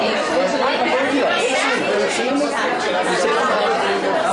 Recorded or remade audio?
recorded